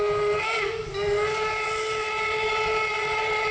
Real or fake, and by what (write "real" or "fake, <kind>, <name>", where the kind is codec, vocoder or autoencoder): real